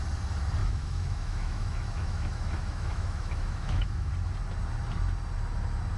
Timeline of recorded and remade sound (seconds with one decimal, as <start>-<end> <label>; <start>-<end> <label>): 0.0-0.6 recorded; 0.6-4.1 remade; 4.1-6.0 recorded